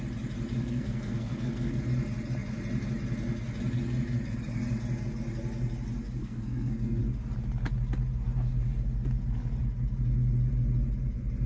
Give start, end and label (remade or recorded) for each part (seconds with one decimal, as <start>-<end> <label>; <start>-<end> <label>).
0.0-0.6 recorded; 0.6-1.8 remade; 1.8-6.2 recorded; 6.2-7.0 remade; 7.0-11.5 recorded